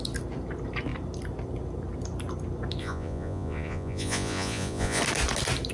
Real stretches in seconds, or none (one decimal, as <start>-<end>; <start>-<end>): 0.0-2.8; 5.0-5.7